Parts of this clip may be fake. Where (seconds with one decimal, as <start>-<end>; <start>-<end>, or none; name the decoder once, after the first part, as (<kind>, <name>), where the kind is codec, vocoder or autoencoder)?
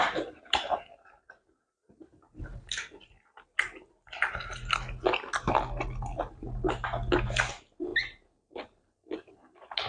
0.0-0.8 (vocoder, BigVGAN v2); 1.8-3.1